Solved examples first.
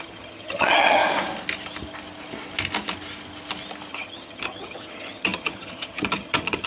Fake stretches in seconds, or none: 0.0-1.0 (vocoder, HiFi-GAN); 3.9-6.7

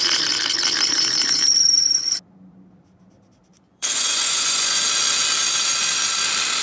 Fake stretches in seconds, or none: 3.5-4.8 (vocoder, Vocos)

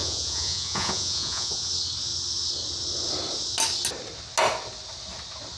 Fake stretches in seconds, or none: 0.0-1.7 (vocoder, Vocos)

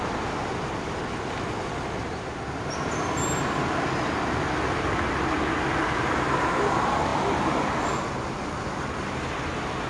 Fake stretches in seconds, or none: none

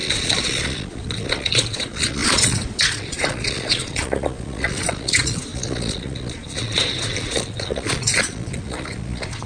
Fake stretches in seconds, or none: 0.0-9.5 (vocoder, Vocos)